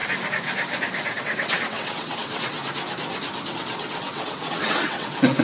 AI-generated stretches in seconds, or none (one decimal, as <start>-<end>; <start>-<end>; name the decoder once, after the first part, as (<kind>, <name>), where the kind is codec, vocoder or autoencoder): 1.2-2.6 (vocoder, WaveNeXt); 3.5-5.4